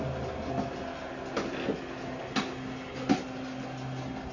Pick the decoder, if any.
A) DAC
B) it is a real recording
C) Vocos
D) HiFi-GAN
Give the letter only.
B